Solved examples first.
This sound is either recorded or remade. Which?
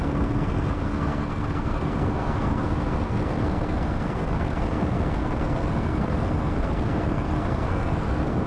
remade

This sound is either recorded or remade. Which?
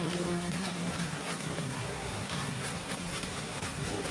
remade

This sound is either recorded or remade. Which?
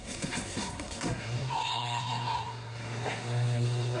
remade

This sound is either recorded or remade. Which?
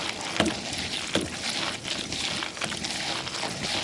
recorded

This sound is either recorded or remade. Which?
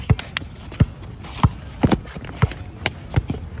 recorded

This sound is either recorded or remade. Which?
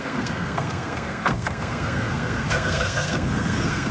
remade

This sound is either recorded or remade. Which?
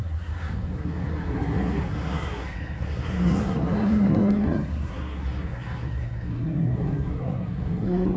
remade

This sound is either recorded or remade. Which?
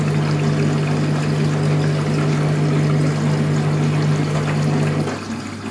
recorded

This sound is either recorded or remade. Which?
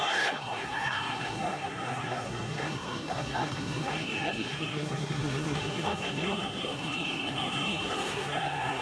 remade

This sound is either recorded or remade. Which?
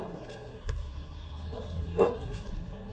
remade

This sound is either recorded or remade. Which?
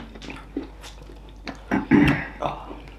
recorded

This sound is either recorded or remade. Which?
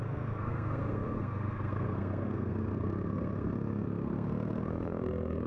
remade